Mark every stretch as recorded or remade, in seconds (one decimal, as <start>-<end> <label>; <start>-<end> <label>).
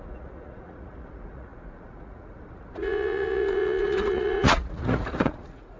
0.0-5.8 remade